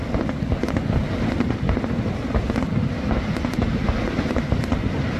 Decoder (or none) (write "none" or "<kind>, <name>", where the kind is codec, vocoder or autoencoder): none